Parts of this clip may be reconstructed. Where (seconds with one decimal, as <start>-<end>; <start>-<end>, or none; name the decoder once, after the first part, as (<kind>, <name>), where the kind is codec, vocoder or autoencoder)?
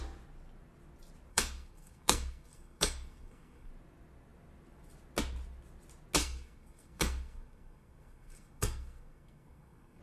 1.3-3.7 (codec, SNAC); 6.2-10.0